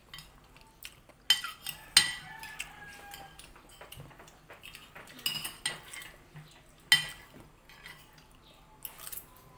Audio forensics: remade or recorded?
recorded